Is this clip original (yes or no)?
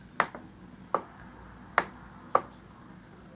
yes